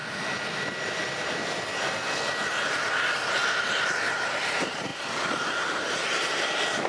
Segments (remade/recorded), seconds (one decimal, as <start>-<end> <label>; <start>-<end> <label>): 0.0-4.1 recorded; 4.1-4.9 remade; 4.9-5.5 recorded; 5.5-6.9 remade

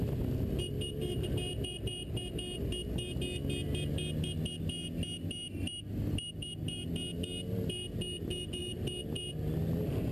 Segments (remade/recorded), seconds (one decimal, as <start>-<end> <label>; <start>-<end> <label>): 0.0-10.1 recorded